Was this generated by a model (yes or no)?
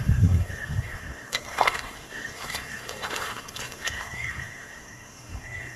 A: yes